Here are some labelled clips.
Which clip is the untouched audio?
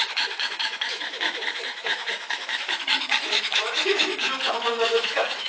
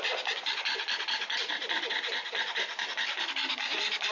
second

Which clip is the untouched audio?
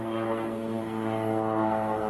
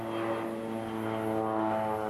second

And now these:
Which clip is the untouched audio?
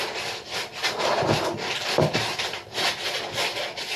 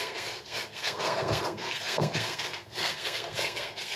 first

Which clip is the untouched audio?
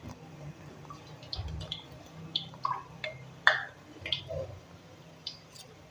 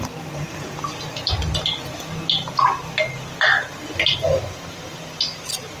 second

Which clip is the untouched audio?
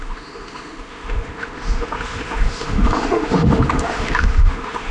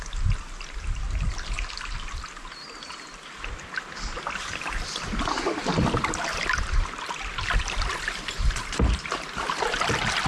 second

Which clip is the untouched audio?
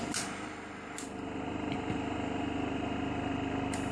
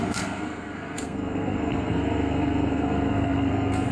first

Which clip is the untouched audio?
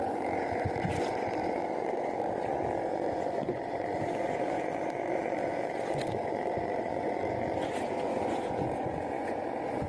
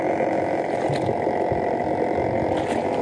second